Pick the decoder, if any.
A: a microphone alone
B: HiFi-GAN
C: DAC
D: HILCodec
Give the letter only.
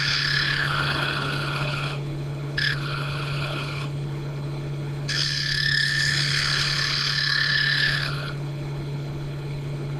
D